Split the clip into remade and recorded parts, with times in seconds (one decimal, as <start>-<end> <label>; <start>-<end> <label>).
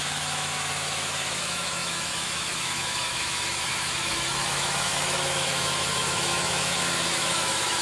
0.0-7.8 remade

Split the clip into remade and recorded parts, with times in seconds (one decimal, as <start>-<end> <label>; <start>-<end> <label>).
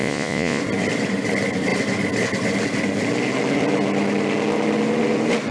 0.0-0.6 remade; 0.6-5.5 recorded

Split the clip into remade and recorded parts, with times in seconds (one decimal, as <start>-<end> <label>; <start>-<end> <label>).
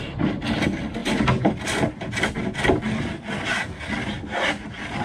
0.0-1.0 recorded; 1.0-3.0 remade; 3.0-5.0 recorded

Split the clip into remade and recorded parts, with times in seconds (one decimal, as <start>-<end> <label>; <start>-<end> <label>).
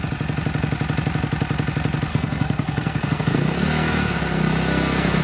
0.0-2.1 recorded; 2.1-5.2 remade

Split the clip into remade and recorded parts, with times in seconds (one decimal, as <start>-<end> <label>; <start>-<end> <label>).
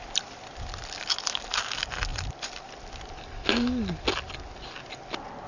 0.0-2.1 recorded; 2.1-2.7 remade; 2.7-5.5 recorded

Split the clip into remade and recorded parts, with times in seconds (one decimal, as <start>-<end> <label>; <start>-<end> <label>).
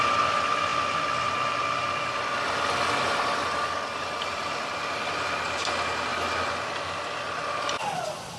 0.0-0.7 recorded; 0.7-5.5 remade; 5.5-8.4 recorded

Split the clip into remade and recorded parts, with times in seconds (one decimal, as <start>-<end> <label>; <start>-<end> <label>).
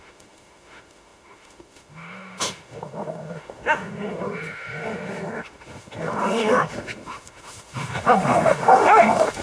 0.0-9.4 remade